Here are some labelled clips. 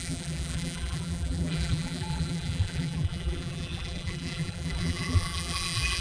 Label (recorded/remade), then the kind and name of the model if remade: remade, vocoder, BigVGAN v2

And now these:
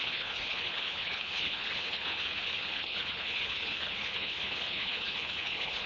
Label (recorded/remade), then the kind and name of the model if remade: remade, codec, HILCodec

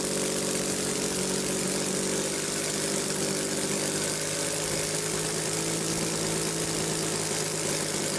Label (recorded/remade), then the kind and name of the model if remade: recorded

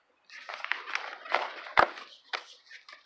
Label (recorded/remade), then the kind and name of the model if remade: recorded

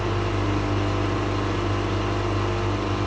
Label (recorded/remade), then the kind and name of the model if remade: recorded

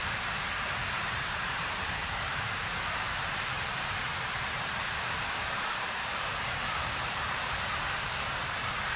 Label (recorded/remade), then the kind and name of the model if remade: remade, vocoder, BigVGAN v2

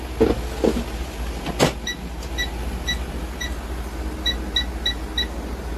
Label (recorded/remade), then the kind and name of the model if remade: recorded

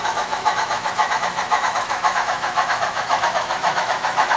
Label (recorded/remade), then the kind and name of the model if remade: remade, autoencoder, DAC-VAE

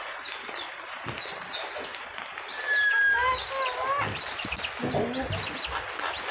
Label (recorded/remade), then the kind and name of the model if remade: recorded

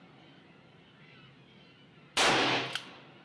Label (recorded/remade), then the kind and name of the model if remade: recorded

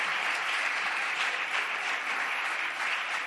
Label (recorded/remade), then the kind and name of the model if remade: remade, vocoder, BigVGAN v2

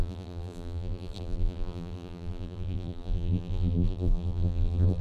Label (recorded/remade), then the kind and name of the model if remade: remade, vocoder, BigVGAN v2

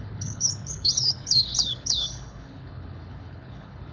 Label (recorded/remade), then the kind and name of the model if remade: remade, codec, HILCodec